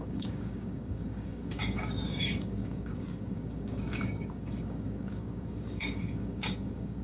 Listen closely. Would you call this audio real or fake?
fake